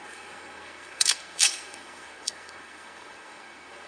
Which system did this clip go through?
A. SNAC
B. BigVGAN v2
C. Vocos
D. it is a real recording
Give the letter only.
A